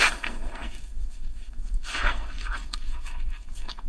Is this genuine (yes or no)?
no